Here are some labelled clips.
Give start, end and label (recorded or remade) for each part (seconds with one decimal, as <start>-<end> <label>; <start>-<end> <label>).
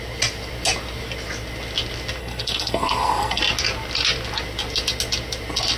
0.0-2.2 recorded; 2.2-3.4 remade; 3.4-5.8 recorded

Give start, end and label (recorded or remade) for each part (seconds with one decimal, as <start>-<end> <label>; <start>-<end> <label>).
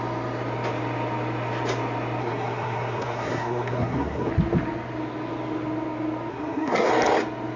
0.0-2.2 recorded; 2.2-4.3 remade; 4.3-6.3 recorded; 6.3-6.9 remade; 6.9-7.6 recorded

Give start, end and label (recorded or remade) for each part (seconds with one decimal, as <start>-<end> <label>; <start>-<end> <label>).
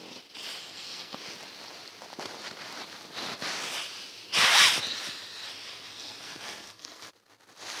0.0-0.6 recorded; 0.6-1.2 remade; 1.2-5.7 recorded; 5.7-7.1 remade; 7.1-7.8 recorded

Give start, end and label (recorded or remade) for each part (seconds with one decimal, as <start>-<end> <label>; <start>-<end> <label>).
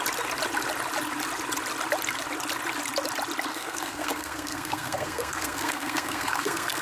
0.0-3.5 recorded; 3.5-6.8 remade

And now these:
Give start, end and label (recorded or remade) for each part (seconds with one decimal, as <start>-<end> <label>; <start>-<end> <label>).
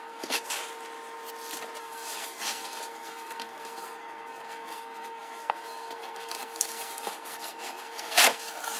0.0-0.6 remade; 0.6-1.8 recorded; 1.8-8.8 remade